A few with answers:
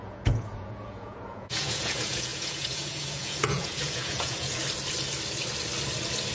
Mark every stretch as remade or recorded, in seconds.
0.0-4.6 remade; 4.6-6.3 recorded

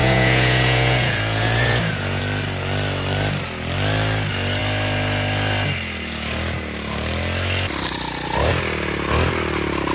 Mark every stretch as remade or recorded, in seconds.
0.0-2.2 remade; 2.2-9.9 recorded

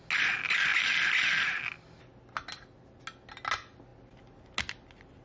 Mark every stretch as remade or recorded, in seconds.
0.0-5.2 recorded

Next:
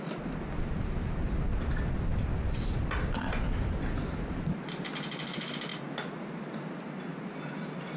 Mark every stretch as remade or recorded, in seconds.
0.0-8.0 recorded

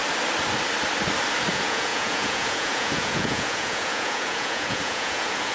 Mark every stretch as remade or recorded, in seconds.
0.0-1.5 recorded; 1.5-5.5 remade

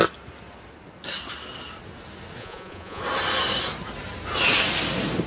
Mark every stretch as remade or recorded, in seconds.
0.0-2.4 recorded; 2.4-3.0 remade; 3.0-5.3 recorded